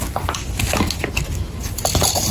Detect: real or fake real